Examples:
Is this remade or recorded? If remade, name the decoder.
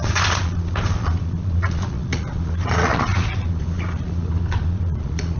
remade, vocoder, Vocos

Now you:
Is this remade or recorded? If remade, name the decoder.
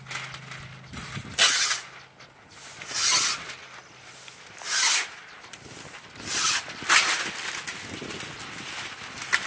recorded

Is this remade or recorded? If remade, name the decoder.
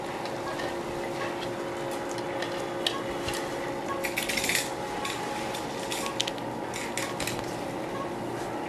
recorded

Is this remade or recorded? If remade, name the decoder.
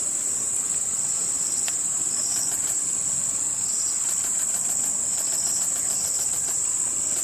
recorded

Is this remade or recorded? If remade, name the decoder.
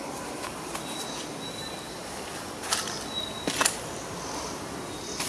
recorded